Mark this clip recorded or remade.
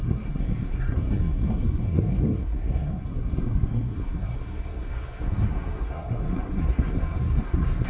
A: remade